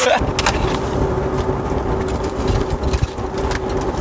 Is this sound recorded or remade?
recorded